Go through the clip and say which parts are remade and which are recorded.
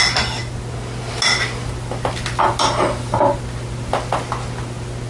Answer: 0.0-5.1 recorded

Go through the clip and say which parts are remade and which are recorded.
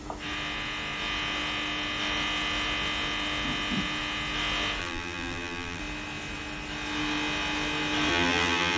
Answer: 0.0-4.8 recorded; 4.8-5.8 remade; 5.8-8.1 recorded; 8.1-8.8 remade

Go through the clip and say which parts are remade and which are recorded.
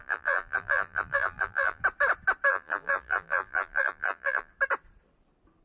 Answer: 0.0-1.8 remade; 1.8-2.5 recorded; 2.5-4.5 remade; 4.5-5.6 recorded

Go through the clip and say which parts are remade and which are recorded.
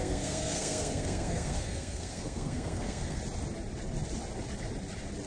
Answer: 0.0-3.2 remade; 3.2-5.3 recorded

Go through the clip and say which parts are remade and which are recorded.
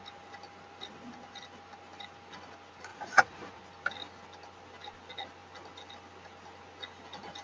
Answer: 0.0-2.9 recorded; 2.9-3.6 remade; 3.6-7.4 recorded